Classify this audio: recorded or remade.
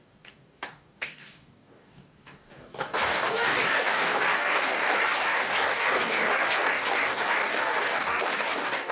remade